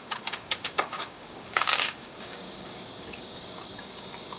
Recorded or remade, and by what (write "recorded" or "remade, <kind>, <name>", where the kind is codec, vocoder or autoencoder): remade, codec, DAC